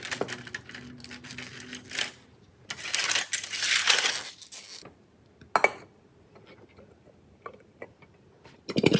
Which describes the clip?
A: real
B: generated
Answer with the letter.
A